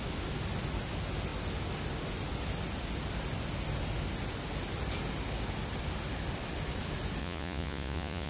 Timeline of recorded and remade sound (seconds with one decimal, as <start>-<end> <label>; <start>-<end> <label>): 0.0-7.2 recorded; 7.2-8.3 remade